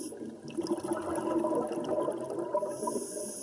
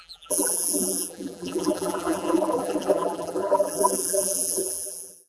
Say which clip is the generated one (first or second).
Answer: second